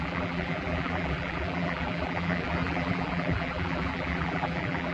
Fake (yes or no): yes